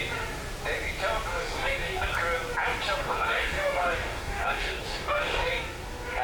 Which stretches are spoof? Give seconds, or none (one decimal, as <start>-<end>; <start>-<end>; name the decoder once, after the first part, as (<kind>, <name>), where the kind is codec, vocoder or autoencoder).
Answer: 1.3-2.1 (codec, DAC); 3.0-5.6